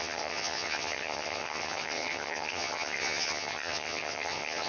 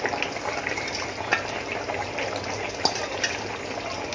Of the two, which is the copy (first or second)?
first